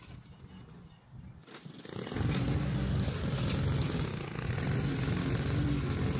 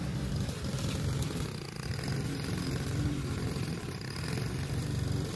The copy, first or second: second